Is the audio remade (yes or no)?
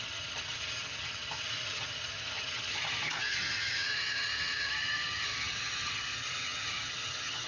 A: yes